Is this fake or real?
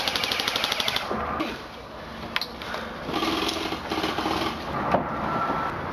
real